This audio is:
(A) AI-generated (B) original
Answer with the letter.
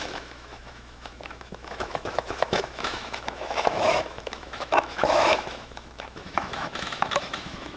A